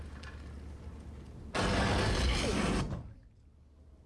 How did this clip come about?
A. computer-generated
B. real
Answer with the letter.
B